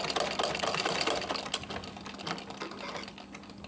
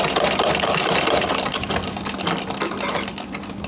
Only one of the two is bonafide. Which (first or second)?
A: first